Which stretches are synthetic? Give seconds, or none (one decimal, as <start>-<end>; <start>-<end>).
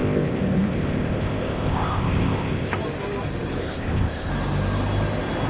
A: 0.0-2.8; 3.6-4.3